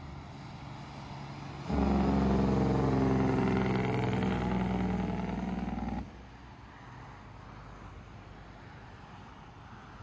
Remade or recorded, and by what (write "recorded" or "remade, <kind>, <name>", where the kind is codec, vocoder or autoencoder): recorded